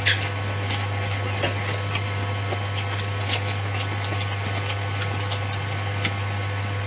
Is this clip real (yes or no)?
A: yes